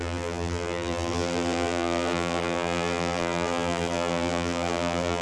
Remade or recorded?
remade